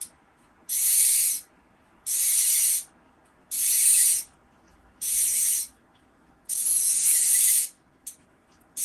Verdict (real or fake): fake